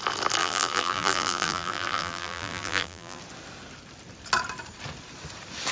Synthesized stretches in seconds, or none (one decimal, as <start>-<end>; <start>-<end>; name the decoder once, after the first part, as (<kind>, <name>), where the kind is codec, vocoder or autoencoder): 0.4-3.2 (vocoder, BigVGAN v2)